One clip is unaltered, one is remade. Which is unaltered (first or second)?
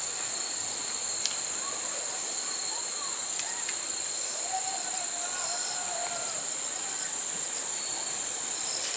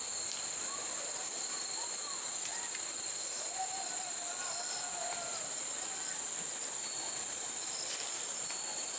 second